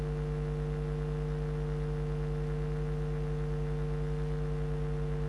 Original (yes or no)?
yes